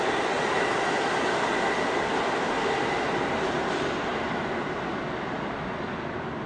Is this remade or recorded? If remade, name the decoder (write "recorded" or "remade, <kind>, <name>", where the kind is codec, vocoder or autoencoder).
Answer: recorded